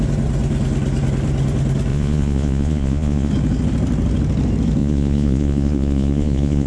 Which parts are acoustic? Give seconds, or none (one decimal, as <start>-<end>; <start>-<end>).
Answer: 0.0-1.9; 3.3-4.8